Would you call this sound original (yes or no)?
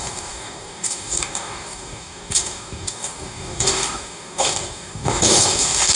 no